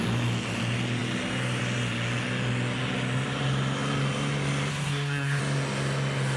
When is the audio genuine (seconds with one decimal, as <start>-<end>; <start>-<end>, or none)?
0.0-4.7; 5.4-6.4